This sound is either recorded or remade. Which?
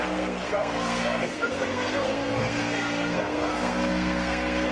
remade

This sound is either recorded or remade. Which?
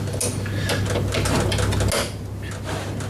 recorded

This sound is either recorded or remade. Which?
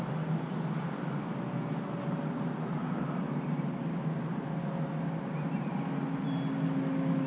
recorded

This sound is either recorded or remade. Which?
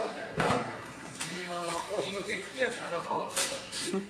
remade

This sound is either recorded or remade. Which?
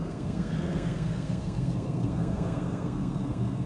remade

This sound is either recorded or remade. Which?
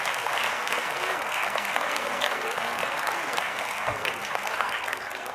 remade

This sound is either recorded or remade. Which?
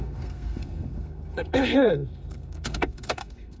remade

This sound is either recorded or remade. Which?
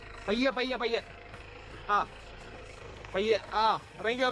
remade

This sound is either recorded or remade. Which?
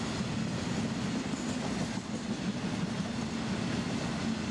recorded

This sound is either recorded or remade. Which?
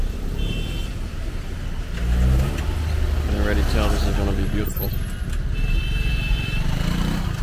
recorded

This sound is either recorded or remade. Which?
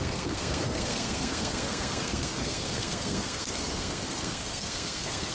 remade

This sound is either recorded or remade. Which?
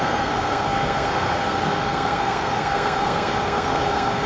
remade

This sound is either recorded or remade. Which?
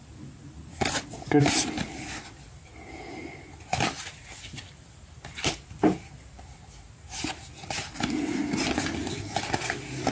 recorded